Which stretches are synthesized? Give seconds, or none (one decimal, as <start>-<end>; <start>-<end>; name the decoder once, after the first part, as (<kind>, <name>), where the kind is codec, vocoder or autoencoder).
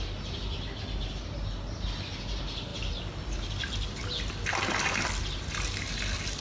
none